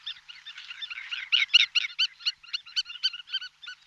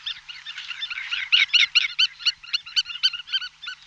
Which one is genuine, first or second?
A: first